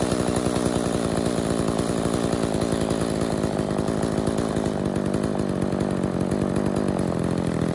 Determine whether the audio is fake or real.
real